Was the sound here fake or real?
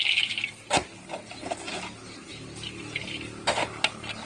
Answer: real